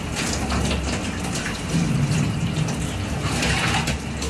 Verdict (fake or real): fake